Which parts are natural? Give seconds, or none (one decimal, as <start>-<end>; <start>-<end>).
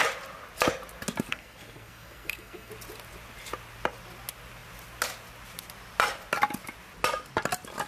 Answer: 0.0-1.3; 2.7-7.9